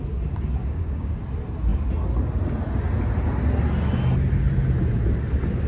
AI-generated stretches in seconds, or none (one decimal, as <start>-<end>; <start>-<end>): 0.6-1.2